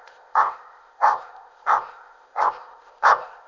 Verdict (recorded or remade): remade